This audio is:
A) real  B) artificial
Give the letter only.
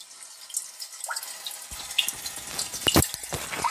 A